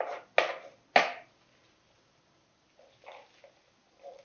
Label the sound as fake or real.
real